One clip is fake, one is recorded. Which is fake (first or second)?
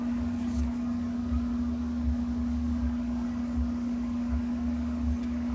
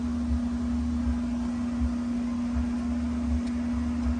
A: first